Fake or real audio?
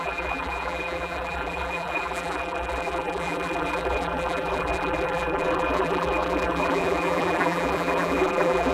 fake